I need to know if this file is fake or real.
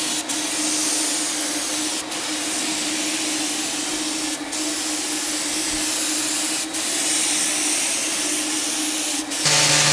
real